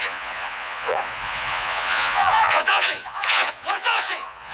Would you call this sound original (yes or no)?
no